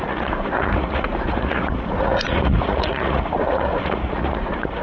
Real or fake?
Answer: fake